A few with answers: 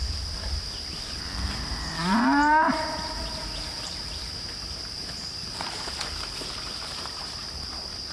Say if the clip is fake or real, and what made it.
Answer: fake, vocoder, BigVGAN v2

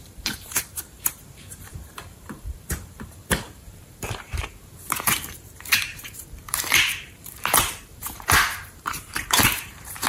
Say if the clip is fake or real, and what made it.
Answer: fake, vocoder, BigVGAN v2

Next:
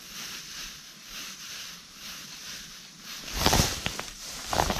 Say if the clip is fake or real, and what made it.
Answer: fake, vocoder, BigVGAN v2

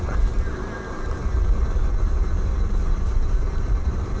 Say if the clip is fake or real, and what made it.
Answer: real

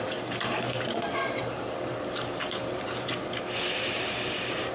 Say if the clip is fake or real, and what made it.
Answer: fake, vocoder, BigVGAN v2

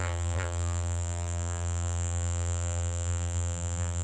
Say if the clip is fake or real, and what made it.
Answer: fake, vocoder, BigVGAN v2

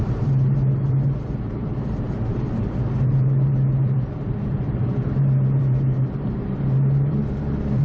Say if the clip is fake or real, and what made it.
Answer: fake, vocoder, BigVGAN v2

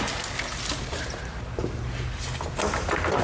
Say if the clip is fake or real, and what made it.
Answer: real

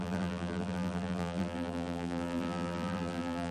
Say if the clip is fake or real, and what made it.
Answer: fake, vocoder, BigVGAN v2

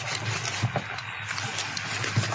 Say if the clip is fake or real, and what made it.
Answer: real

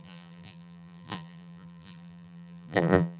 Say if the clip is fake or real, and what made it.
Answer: fake, vocoder, BigVGAN v2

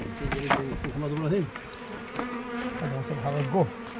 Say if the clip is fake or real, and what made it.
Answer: real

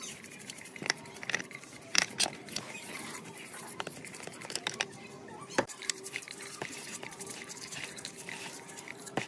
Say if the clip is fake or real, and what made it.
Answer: fake, vocoder, BigVGAN v2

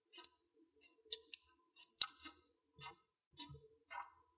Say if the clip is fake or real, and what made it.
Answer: real